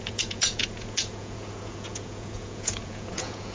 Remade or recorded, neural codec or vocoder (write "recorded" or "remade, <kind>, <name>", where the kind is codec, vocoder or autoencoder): remade, vocoder, Vocos